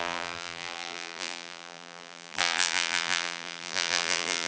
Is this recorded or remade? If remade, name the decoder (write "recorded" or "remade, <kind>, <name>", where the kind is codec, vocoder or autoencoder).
remade, vocoder, BigVGAN v2